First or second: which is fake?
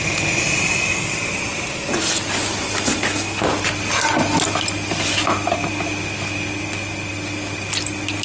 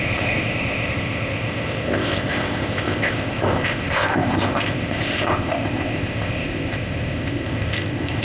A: second